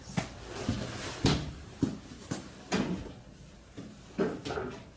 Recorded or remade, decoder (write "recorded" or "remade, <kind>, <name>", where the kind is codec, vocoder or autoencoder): recorded